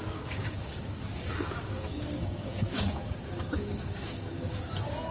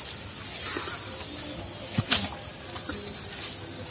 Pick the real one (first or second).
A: second